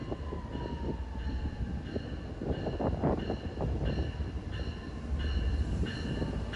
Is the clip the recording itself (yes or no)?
yes